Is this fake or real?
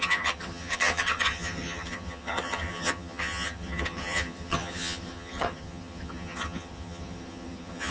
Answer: fake